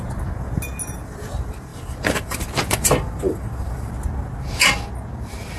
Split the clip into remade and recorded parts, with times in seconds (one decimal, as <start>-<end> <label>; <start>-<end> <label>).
0.0-1.7 recorded; 1.7-3.9 remade; 3.9-5.6 recorded